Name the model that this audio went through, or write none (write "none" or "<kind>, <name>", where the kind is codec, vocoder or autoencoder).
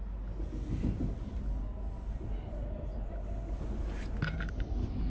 none